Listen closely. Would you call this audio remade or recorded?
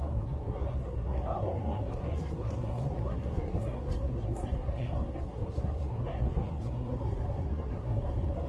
remade